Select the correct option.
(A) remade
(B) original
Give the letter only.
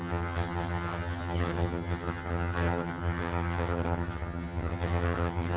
A